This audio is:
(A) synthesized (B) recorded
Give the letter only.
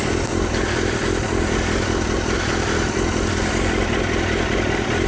B